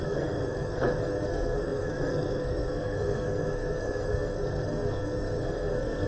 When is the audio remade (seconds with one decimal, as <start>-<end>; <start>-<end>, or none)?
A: 0.0-6.1